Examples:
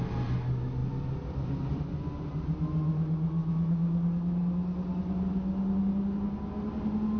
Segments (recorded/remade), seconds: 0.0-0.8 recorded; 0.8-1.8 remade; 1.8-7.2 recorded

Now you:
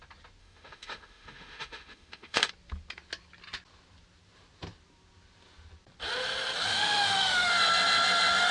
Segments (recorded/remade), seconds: 0.0-0.4 recorded; 0.4-2.5 remade; 2.5-6.7 recorded; 6.7-7.5 remade; 7.5-8.5 recorded

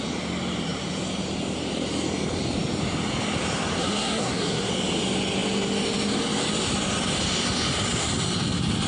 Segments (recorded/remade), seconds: 0.0-3.8 recorded; 3.8-4.7 remade; 4.7-8.9 recorded

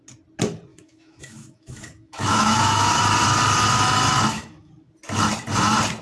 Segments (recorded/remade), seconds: 0.0-0.7 recorded; 0.7-3.0 remade; 3.0-4.1 recorded; 4.1-4.7 remade; 4.7-6.0 recorded